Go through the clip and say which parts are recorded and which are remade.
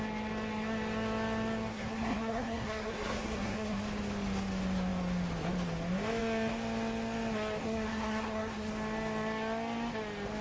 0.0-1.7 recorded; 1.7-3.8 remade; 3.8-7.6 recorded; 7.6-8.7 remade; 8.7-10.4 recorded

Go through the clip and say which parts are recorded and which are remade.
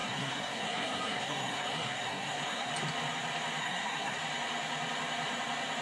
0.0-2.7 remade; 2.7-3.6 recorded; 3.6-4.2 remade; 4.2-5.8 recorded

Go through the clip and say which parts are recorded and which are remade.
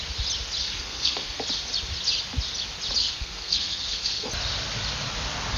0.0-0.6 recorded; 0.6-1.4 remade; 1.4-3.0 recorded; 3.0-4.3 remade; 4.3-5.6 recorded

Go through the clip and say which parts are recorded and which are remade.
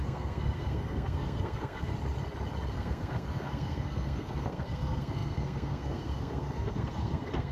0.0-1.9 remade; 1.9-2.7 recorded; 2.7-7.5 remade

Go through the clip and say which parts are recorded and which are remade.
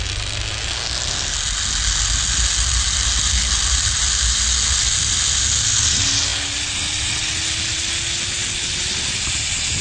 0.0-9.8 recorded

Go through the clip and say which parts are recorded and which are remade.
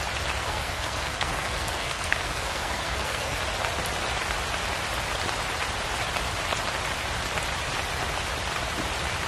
0.0-0.4 recorded; 0.4-3.4 remade; 3.4-9.3 recorded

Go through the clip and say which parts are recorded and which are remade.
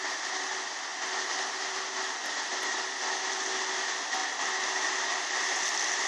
0.0-6.1 recorded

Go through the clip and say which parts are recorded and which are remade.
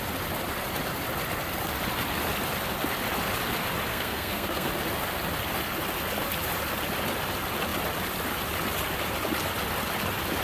0.0-3.9 recorded; 3.9-4.7 remade; 4.7-10.4 recorded